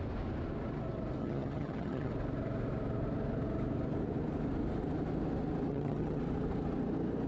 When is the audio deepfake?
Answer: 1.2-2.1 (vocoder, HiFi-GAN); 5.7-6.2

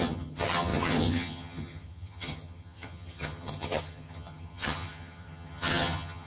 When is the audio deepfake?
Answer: 0.0-6.3 (vocoder, HiFi-GAN)

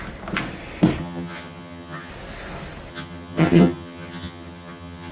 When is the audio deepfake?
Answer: 1.0-2.1 (vocoder, HiFi-GAN); 2.9-5.1

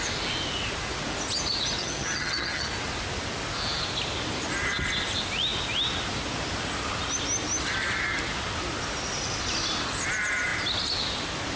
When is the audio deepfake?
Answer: 1.8-2.7 (vocoder, HiFi-GAN)